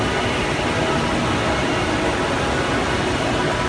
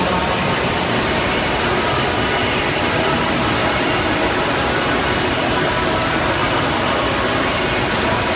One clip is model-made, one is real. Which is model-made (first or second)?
second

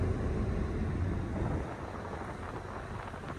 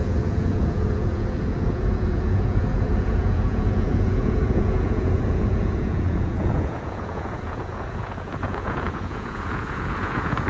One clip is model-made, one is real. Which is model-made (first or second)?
second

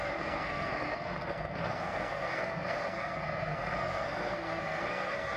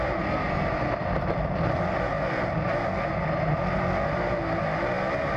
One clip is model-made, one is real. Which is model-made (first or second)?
first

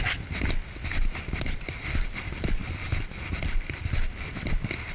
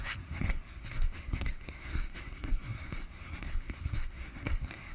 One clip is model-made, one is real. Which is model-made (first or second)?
second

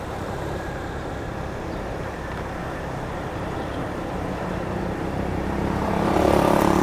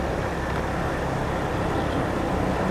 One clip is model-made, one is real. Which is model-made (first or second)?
first